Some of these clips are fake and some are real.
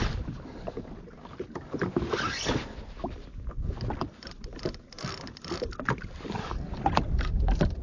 real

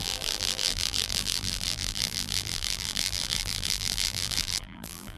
fake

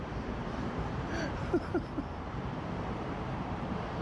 fake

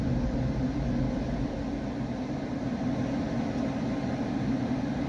real